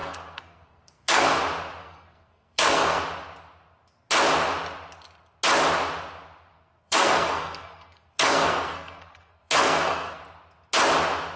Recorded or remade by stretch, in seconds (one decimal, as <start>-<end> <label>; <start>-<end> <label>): 0.0-1.4 remade; 1.4-1.8 recorded; 1.8-3.0 remade; 3.0-6.5 recorded; 6.5-10.2 remade; 10.2-11.4 recorded